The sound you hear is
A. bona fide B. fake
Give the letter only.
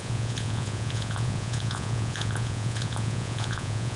B